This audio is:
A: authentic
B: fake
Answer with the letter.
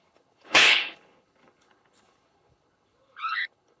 B